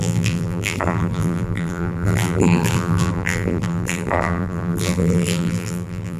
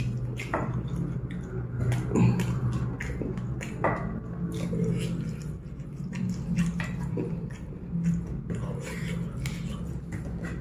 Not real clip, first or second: first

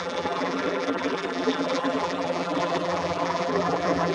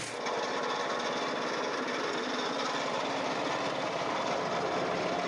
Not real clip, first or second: first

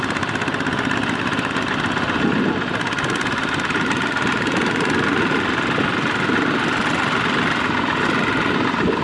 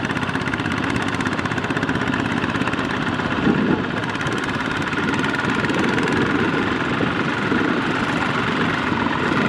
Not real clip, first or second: second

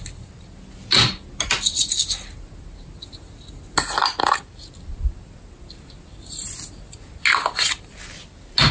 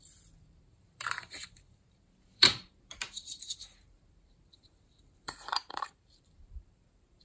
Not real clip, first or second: second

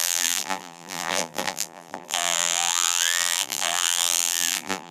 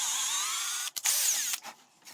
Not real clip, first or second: first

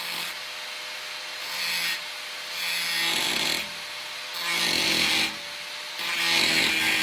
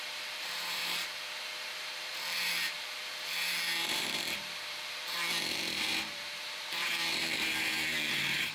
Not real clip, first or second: second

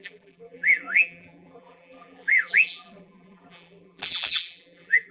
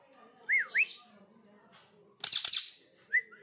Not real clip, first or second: first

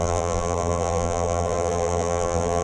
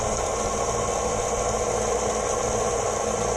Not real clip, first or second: first